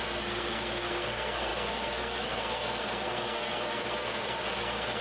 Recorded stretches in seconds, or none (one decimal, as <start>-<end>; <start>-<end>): none